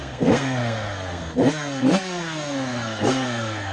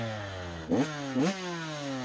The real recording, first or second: second